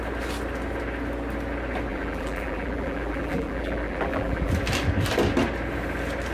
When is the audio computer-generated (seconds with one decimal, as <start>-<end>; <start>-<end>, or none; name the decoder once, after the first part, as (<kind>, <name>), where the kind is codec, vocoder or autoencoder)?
1.9-4.5 (vocoder, BigVGAN v2)